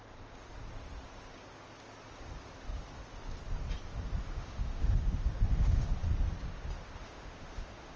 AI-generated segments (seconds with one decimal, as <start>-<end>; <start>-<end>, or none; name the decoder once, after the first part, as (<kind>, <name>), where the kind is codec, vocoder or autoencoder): 4.2-6.0 (autoencoder, DAC-VAE); 7.0-8.0